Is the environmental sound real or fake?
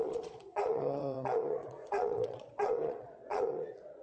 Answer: fake